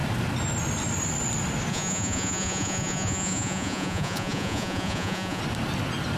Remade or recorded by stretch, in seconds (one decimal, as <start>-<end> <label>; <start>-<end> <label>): 0.0-1.7 recorded; 1.7-5.4 remade; 5.4-6.2 recorded